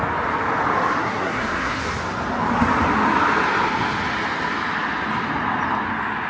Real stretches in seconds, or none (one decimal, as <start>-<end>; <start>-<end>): 0.0-1.0; 1.8-6.3